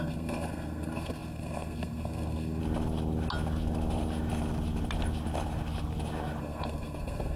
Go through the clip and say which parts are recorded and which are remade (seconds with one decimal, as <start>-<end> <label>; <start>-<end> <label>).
0.0-2.6 remade; 2.6-6.4 recorded; 6.4-7.4 remade